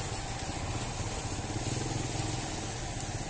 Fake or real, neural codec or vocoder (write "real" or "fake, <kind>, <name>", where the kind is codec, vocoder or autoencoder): real